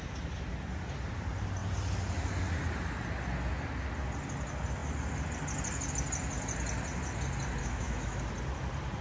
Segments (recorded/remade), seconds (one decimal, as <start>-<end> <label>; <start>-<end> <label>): 0.0-7.6 recorded; 7.6-8.2 remade; 8.2-9.0 recorded